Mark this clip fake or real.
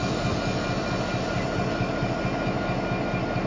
real